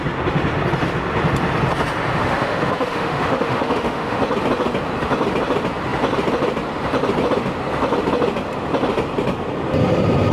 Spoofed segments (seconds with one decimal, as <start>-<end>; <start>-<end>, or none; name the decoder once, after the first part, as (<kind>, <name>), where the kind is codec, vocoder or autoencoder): 2.2-4.2 (autoencoder, DAC-VAE)

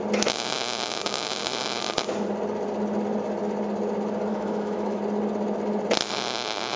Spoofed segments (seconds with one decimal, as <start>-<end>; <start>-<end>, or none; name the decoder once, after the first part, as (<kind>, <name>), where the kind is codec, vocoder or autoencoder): 4.3-5.0 (autoencoder, DAC-VAE)

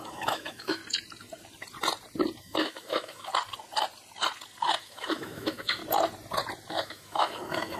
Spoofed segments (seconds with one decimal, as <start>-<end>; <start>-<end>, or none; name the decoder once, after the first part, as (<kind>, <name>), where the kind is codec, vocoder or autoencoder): 0.0-0.8 (autoencoder, DAC-VAE); 2.4-3.3; 4.8-5.8; 6.7-7.8

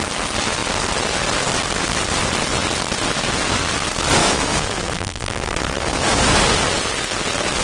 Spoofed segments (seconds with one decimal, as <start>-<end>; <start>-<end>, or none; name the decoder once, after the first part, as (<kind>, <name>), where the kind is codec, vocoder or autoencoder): 4.2-6.2 (autoencoder, DAC-VAE)

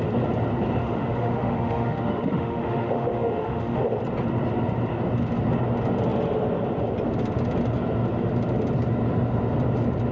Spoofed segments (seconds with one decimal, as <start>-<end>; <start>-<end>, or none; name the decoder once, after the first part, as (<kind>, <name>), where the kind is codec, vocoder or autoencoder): 0.8-3.8 (autoencoder, DAC-VAE)

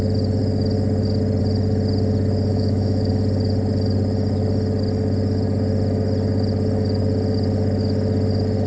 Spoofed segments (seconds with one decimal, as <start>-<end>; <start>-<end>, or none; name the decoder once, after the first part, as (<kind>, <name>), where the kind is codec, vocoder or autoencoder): 2.5-3.1 (autoencoder, DAC-VAE)